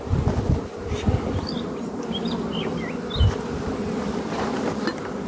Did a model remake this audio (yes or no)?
no